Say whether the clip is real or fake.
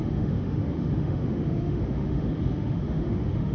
fake